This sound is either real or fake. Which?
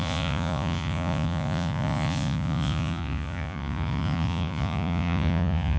fake